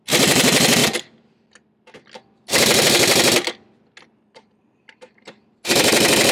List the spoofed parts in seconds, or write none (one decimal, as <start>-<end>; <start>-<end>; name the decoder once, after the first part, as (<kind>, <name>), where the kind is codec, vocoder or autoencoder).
none